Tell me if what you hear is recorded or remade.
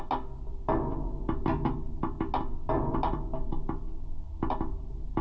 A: recorded